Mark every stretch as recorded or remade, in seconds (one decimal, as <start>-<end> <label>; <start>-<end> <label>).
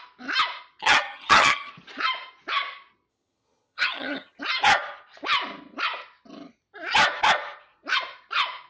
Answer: 0.0-0.8 recorded; 0.8-1.7 remade; 1.7-3.1 recorded; 3.1-4.4 remade; 4.4-8.7 recorded